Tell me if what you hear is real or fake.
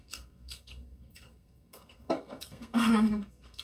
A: fake